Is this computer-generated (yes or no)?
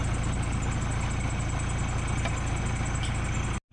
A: no